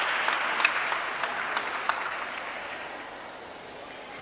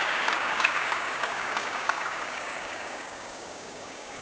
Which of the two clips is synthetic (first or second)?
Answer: second